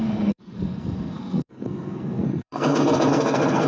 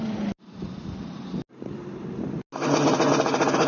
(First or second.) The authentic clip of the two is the second